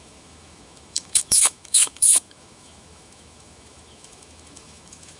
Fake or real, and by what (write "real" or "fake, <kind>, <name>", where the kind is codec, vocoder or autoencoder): fake, autoencoder, DAC-VAE